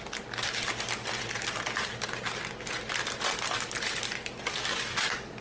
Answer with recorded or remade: recorded